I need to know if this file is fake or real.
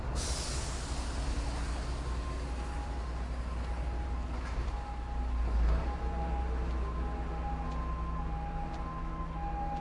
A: real